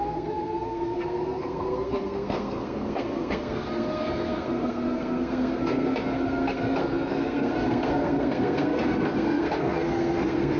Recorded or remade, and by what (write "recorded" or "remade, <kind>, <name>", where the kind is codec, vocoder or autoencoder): remade, codec, SNAC